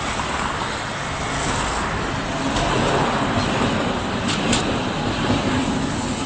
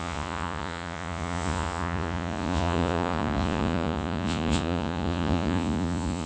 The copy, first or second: second